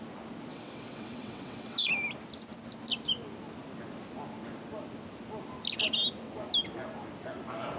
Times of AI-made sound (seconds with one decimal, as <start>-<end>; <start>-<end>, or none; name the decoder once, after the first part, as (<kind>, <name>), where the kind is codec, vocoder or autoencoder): 0.5-1.9 (vocoder, WaveNeXt)